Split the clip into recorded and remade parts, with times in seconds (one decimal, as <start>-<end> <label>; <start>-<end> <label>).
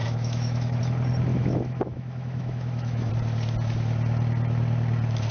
0.0-0.8 remade; 0.8-1.3 recorded; 1.3-3.1 remade; 3.1-5.3 recorded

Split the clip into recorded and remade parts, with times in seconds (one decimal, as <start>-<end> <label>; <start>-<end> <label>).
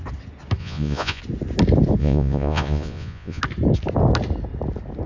0.0-0.6 recorded; 0.6-1.2 remade; 1.2-2.0 recorded; 2.0-3.4 remade; 3.4-5.1 recorded